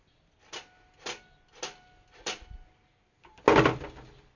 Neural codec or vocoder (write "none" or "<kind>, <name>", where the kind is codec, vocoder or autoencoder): none